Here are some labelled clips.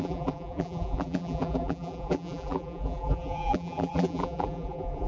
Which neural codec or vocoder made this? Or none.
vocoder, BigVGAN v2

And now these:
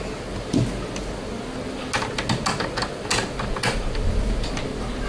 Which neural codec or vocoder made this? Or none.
none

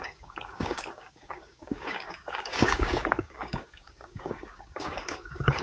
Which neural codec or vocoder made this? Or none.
codec, DAC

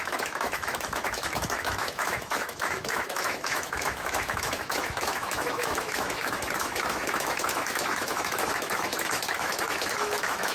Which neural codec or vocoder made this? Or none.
autoencoder, DAC-VAE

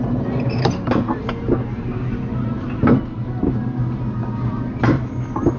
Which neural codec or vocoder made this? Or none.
none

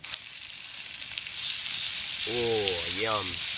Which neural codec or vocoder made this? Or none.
none